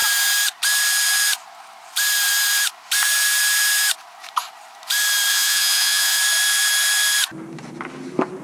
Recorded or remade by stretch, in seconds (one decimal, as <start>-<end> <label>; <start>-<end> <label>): 0.0-5.3 recorded; 5.3-6.2 remade; 6.2-8.4 recorded